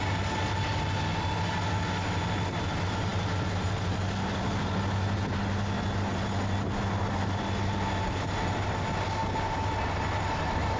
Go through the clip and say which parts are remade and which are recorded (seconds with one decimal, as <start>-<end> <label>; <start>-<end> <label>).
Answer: 0.0-10.8 recorded